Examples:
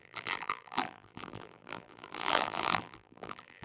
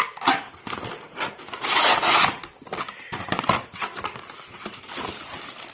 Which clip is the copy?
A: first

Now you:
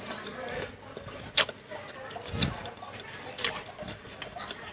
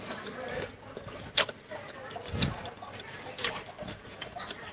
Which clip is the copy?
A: second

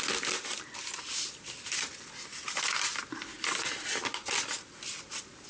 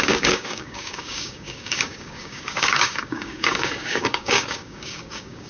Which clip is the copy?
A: second